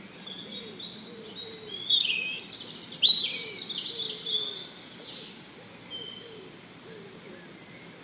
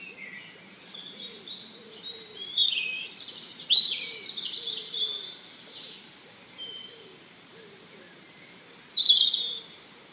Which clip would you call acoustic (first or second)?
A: first